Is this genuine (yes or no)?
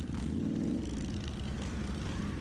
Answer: yes